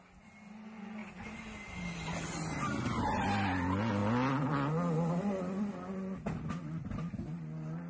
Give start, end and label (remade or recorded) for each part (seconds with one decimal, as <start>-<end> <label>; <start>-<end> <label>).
0.0-7.9 recorded